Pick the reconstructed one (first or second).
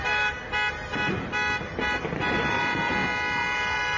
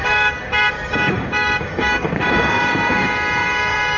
second